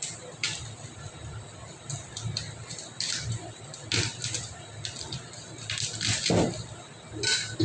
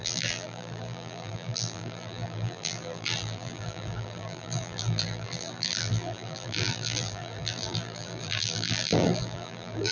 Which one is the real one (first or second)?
first